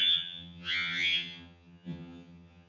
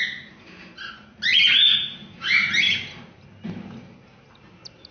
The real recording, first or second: second